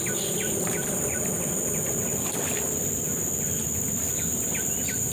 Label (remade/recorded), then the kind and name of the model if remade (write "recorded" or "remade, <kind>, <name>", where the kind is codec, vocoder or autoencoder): recorded